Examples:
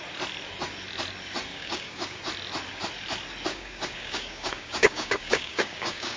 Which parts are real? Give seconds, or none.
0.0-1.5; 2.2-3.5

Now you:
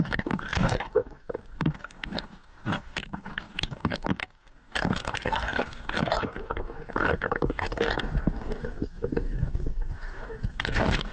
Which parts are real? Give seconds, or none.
none

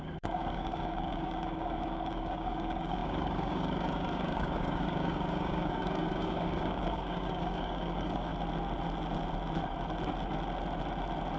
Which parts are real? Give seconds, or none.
8.3-11.4

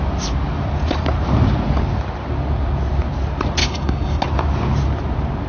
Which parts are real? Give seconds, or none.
0.0-3.6; 4.2-5.5

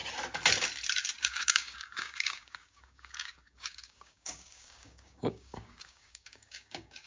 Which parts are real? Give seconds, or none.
0.0-1.2

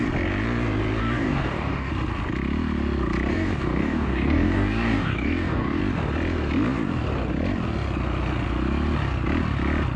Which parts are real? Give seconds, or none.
0.0-1.0; 1.9-3.3; 5.8-10.0

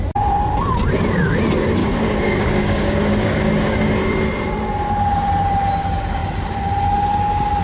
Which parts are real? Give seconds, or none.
0.0-1.8; 3.9-7.6